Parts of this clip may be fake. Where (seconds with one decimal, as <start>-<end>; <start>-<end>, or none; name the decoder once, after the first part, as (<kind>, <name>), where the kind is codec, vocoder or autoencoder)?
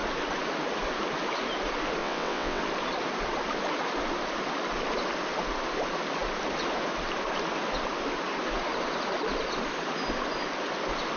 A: 2.0-2.6 (vocoder, WaveNeXt)